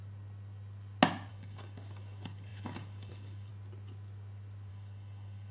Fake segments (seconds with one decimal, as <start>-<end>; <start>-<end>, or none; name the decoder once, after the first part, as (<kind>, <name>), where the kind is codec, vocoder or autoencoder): 1.3-3.5 (codec, DAC); 4.7-5.5